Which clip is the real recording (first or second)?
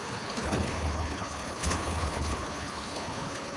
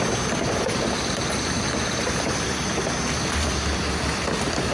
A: second